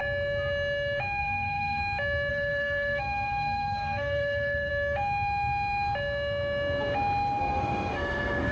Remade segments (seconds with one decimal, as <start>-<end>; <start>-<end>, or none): 1.2-1.8; 2.3-4.7; 7.4-8.5